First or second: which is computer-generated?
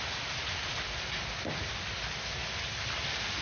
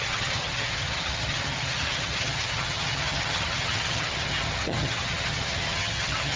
second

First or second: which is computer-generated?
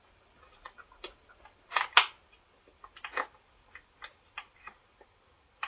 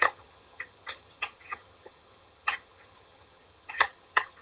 second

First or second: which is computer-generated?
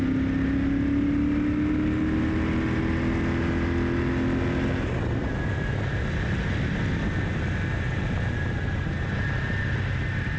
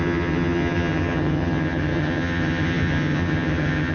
second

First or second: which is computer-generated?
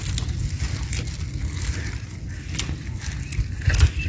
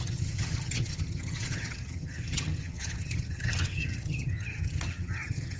second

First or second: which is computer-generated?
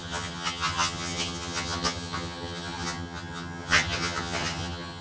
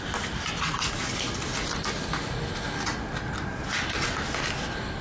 first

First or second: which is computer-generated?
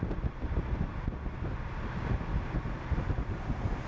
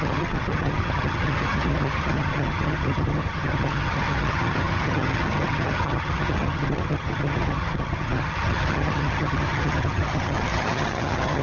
second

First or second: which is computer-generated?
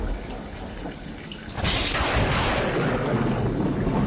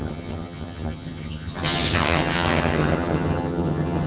second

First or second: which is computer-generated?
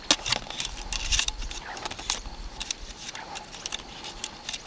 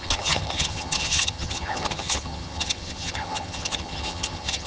second